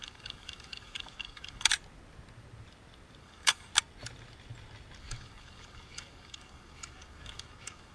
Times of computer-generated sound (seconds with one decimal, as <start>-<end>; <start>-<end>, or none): 0.0-1.7; 3.2-3.7; 5.0-7.9